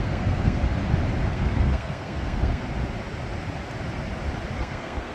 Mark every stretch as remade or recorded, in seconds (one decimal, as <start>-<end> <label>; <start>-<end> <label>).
0.0-0.6 remade; 0.6-1.3 recorded; 1.3-2.6 remade; 2.6-4.6 recorded; 4.6-5.1 remade